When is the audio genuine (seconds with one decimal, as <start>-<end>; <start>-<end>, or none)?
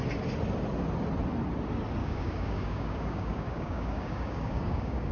0.0-2.0